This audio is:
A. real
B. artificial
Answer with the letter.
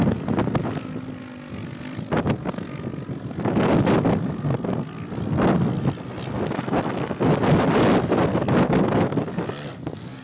A